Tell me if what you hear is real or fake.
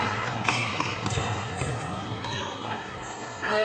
fake